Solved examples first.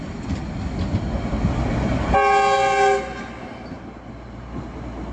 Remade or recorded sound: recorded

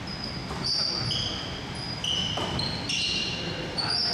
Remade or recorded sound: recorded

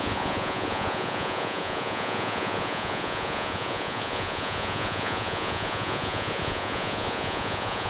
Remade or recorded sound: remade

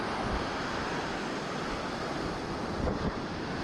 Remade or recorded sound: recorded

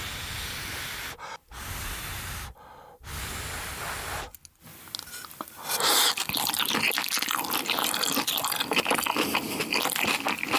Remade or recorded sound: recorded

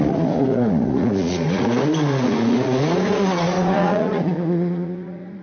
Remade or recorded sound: remade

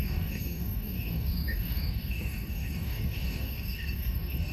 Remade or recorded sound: remade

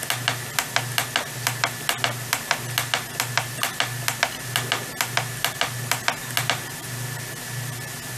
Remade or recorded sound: recorded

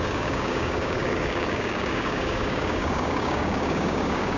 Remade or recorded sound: remade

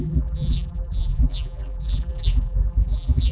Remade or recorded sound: remade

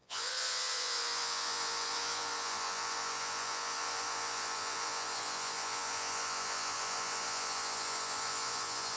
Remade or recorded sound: remade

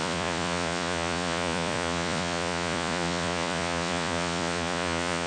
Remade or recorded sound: remade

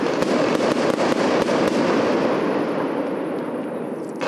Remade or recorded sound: recorded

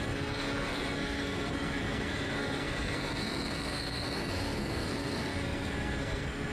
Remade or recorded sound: remade